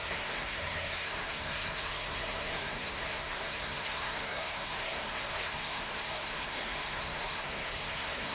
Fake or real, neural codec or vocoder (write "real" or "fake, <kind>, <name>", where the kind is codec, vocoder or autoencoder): fake, codec, SNAC